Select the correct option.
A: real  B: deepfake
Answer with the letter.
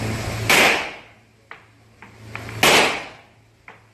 A